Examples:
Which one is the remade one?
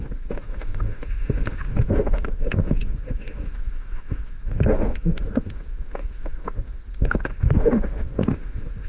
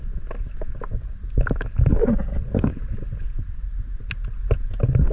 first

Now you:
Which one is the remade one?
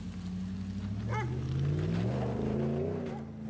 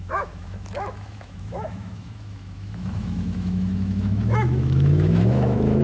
second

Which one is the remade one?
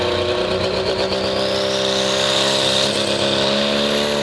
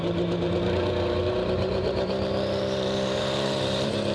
second